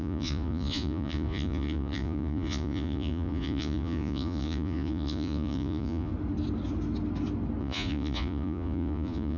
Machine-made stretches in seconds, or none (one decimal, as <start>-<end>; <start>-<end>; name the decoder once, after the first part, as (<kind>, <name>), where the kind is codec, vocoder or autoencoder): 0.0-6.1 (vocoder, Vocos); 7.6-9.4